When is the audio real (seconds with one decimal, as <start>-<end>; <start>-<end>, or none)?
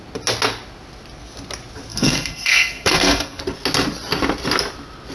0.0-1.9; 3.4-5.1